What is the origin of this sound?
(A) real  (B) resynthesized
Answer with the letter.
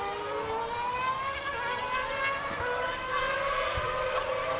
A